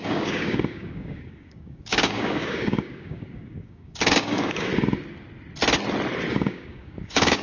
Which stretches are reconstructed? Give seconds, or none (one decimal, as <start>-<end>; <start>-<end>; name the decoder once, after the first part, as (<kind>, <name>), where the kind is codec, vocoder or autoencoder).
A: 0.0-4.7 (codec, DAC); 6.3-7.4